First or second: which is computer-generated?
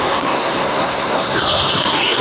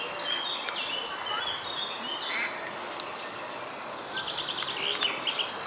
first